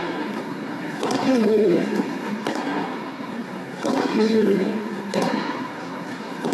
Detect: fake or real fake